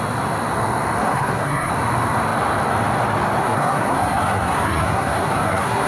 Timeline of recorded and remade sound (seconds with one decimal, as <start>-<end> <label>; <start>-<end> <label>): 0.0-1.0 recorded; 1.0-1.7 remade; 1.7-3.4 recorded; 3.4-5.9 remade

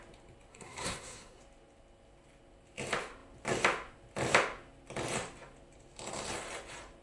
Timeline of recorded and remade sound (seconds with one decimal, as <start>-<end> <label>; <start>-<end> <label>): 0.0-0.5 recorded; 0.5-1.4 remade; 1.4-7.0 recorded

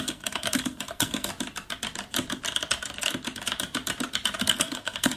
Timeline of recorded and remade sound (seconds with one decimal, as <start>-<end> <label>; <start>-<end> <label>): 0.0-1.3 remade; 1.3-4.4 recorded; 4.4-5.2 remade

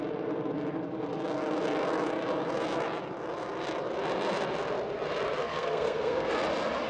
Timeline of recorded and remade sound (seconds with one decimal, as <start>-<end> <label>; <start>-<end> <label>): 0.0-5.4 recorded; 5.4-6.3 remade; 6.3-6.9 recorded

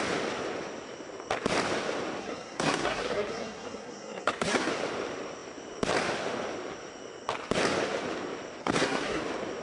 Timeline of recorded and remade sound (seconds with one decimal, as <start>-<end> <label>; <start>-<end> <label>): 0.0-2.2 recorded; 2.2-4.7 remade; 4.7-8.6 recorded; 8.6-9.2 remade; 9.2-9.6 recorded

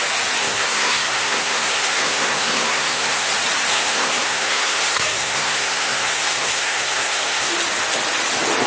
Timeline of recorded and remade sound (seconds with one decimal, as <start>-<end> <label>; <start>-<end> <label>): 0.0-0.4 recorded; 0.4-3.3 remade; 3.3-3.7 recorded; 3.7-7.5 remade; 7.5-8.7 recorded